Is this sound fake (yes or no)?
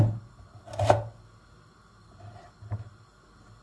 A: no